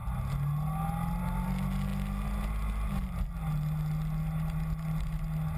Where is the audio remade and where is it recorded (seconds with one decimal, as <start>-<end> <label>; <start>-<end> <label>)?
0.0-5.6 recorded